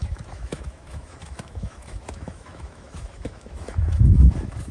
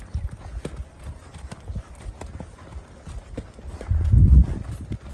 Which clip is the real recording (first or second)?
second